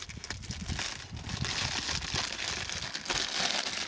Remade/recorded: recorded